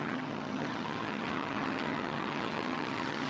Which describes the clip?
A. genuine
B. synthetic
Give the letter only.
B